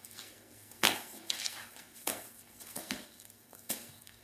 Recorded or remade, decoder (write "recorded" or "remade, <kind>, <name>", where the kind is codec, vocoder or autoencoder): remade, codec, SNAC